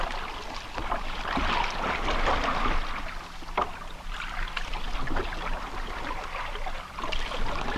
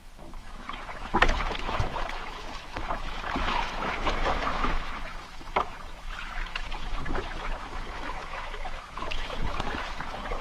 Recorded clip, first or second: first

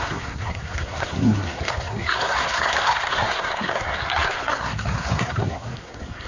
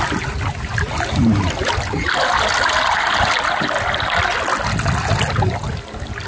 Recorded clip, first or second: second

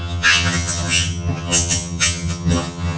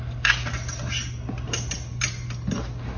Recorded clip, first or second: second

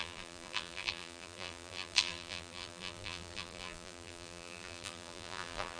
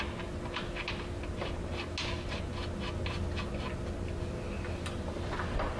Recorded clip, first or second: second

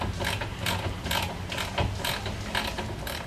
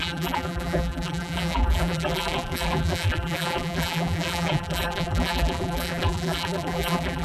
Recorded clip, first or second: first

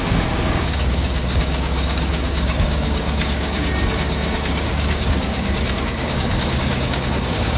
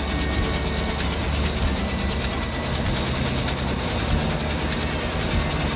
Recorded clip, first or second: second